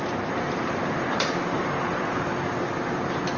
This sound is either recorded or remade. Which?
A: remade